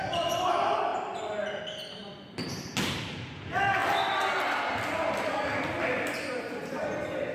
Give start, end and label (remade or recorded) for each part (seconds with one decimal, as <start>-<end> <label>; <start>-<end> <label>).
0.0-7.3 recorded